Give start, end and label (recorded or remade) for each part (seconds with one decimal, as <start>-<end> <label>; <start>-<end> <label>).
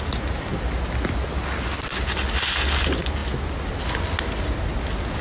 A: 0.0-5.2 recorded